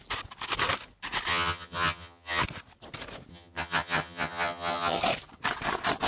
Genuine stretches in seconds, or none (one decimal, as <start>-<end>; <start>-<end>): 0.0-1.3; 2.4-3.3; 5.0-6.1